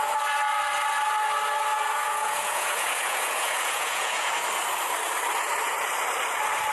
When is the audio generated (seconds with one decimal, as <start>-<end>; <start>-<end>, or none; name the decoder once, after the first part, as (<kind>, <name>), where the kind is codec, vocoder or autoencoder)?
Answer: 1.7-4.3 (vocoder, Vocos)